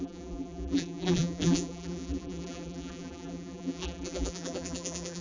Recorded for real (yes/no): no